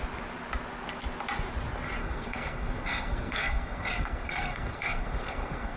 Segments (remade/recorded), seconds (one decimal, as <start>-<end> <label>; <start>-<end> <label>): 0.0-2.0 recorded; 2.0-5.8 remade